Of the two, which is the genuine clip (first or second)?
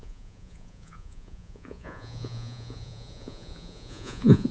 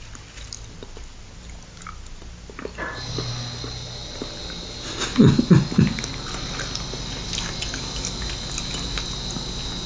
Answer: second